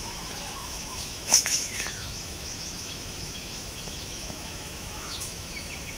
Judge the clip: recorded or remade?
remade